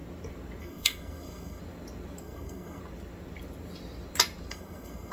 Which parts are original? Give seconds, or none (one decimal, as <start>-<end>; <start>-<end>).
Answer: 0.0-0.6; 1.6-2.2; 2.8-4.5